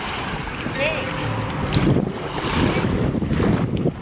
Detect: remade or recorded recorded